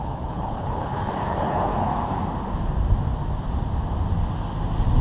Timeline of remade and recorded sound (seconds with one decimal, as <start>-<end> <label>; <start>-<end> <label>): 0.0-1.7 remade; 1.7-5.0 recorded